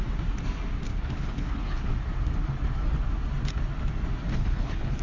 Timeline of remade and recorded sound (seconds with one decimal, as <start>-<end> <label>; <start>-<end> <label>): 0.0-0.9 recorded; 0.9-1.9 remade; 1.9-4.3 recorded; 4.3-5.0 remade